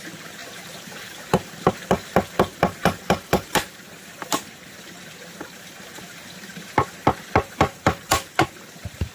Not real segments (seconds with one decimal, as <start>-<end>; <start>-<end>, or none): 0.0-7.0; 7.5-9.1